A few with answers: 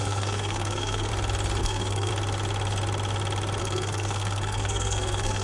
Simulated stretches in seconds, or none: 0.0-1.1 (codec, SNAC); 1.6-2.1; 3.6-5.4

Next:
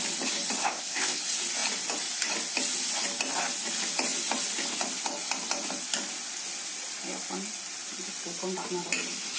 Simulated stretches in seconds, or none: 0.6-1.2 (codec, ZipCodec)

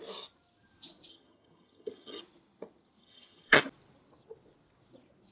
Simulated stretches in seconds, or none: 1.1-2.2 (vocoder, HiFi-GAN); 3.0-3.6